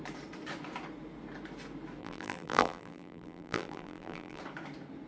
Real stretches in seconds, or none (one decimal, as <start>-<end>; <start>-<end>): 0.0-2.0; 4.4-5.1